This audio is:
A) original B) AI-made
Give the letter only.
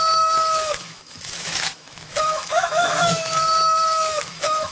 B